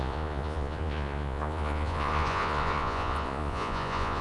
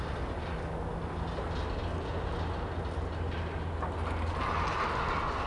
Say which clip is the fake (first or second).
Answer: first